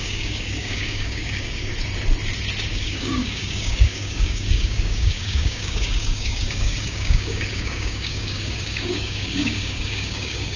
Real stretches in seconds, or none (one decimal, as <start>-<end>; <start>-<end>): 1.7-2.7